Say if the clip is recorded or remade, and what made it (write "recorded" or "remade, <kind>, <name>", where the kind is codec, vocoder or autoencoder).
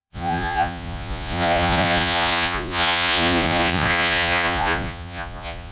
remade, vocoder, Vocos